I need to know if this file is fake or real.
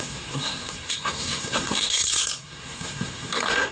fake